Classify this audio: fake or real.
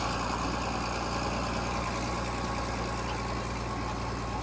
real